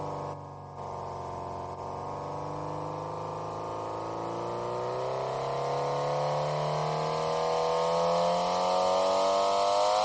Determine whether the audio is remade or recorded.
recorded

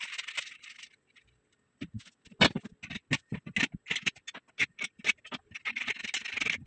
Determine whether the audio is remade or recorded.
recorded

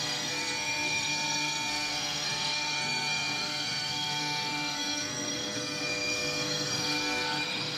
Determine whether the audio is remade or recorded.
remade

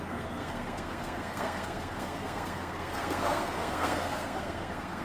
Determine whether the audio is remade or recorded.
remade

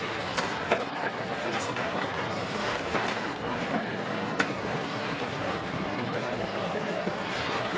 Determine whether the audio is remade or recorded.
remade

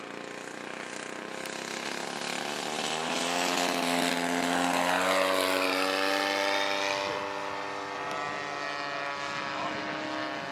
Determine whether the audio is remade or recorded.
recorded